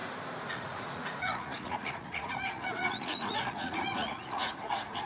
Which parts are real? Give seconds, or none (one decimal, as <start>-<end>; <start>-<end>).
0.0-0.5